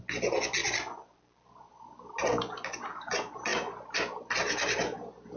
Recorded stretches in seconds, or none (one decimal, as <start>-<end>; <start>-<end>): 0.0-5.4